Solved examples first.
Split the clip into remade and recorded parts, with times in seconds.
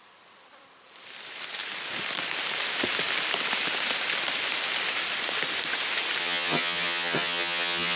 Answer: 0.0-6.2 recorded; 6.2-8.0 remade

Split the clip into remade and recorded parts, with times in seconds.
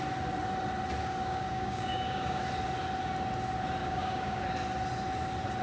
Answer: 0.0-1.0 recorded; 1.0-2.4 remade; 2.4-3.8 recorded; 3.8-4.4 remade; 4.4-5.6 recorded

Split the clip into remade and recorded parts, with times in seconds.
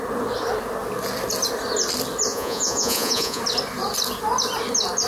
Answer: 0.0-2.3 recorded; 2.3-3.4 remade; 3.4-5.1 recorded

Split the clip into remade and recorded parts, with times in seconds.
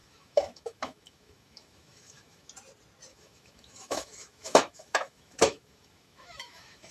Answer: 0.0-2.5 remade; 2.5-3.1 recorded; 3.1-6.9 remade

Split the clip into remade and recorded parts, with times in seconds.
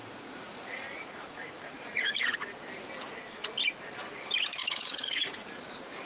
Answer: 0.0-2.5 remade; 2.5-4.6 recorded; 4.6-5.5 remade; 5.5-6.1 recorded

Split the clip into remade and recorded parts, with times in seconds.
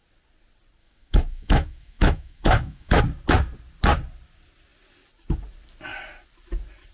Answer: 0.0-0.8 recorded; 0.8-3.0 remade; 3.0-6.9 recorded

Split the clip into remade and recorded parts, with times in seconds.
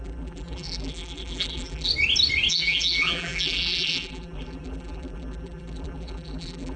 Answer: 0.0-1.9 remade; 1.9-2.5 recorded; 2.5-6.8 remade